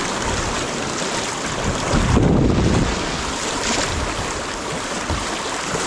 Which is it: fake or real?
real